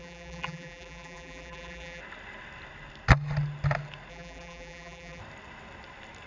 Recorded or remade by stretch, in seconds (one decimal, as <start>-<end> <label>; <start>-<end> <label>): 0.0-2.0 remade; 2.0-4.1 recorded; 4.1-5.2 remade; 5.2-6.3 recorded